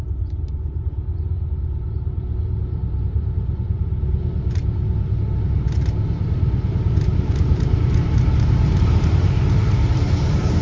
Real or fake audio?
fake